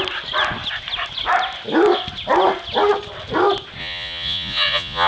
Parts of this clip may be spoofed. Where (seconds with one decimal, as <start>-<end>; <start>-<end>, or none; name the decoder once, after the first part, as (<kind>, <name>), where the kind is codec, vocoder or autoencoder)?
3.8-5.1 (vocoder, Vocos)